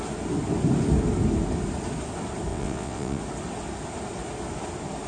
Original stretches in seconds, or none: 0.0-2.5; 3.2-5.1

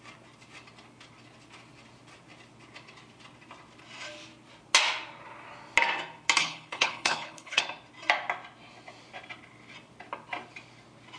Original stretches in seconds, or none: 0.0-6.4; 7.6-11.2

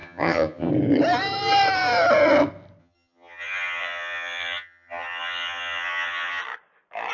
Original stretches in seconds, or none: 0.7-2.8; 6.4-7.1